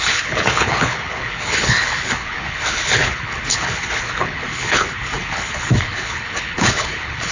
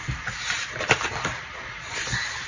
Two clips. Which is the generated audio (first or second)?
first